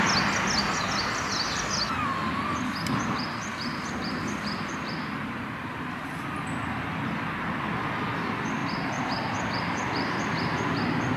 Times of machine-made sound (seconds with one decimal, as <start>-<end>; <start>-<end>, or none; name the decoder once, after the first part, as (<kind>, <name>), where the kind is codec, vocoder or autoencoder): 3.7-4.6 (vocoder, BigVGAN v2); 8.6-10.5